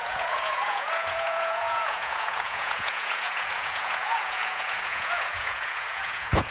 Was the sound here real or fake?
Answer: fake